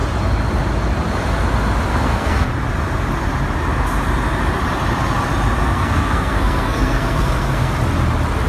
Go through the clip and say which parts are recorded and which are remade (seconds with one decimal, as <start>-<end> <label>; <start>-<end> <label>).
0.0-1.9 recorded; 1.9-2.5 remade; 2.5-5.6 recorded; 5.6-7.7 remade; 7.7-8.5 recorded